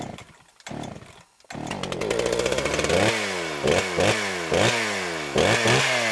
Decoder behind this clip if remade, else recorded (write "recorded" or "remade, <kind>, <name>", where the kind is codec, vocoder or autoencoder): recorded